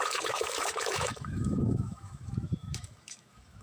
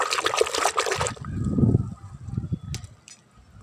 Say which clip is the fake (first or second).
first